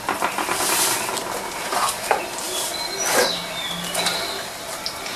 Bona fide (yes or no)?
no